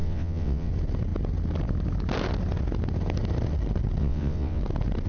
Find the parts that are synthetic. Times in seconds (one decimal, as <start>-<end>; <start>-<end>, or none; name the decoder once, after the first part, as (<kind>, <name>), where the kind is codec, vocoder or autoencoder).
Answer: 0.0-0.7 (vocoder, WaveNeXt); 4.0-4.6